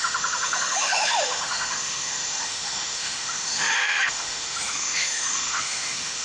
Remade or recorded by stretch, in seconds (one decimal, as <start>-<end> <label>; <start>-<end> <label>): 0.0-6.2 remade